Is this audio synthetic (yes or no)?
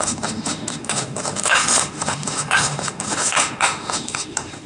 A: yes